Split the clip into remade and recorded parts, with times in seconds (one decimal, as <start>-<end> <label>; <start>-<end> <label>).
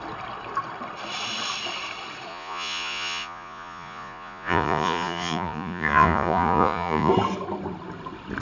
0.0-2.3 recorded; 2.3-7.1 remade; 7.1-8.4 recorded